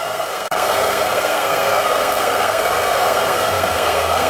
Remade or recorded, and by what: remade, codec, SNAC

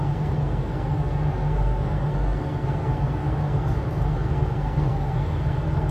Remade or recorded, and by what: remade, codec, SNAC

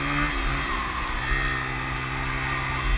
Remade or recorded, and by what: recorded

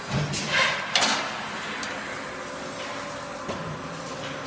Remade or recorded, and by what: recorded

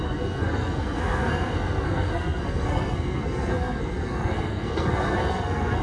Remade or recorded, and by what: remade, codec, SNAC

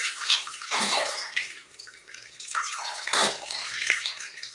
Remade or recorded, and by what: remade, codec, SNAC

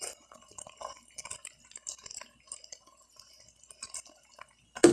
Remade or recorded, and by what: recorded